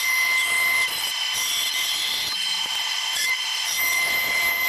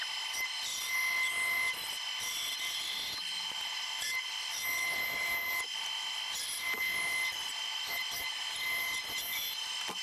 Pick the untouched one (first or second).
second